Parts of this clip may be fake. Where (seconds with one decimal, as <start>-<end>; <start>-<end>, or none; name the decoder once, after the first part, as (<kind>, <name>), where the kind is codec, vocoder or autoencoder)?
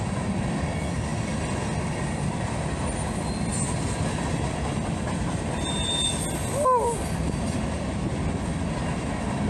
none